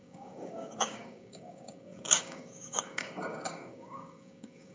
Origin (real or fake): fake